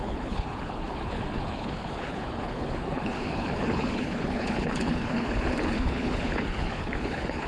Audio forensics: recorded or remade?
remade